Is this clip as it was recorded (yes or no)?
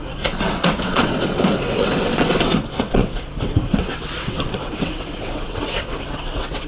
no